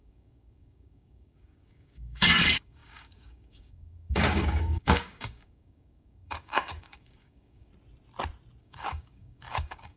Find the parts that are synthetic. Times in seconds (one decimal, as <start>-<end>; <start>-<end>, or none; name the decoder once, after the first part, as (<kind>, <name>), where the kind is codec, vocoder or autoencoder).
0.0-7.7 (codec, DAC); 8.6-10.0